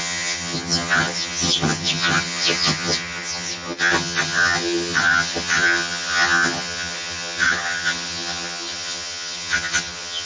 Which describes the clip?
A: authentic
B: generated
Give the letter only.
B